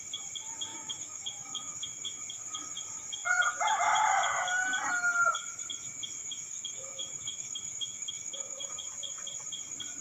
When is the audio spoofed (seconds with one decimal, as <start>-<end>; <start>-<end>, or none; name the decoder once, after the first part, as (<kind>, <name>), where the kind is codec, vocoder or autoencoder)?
0.7-2.2 (autoencoder, DAC-VAE); 6.2-8.7